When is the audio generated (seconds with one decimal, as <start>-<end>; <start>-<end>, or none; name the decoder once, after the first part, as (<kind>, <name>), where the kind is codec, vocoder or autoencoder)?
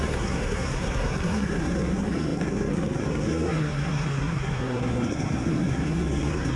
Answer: 0.0-6.6 (codec, SNAC)